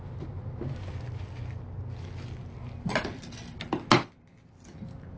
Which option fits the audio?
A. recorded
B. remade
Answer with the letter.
A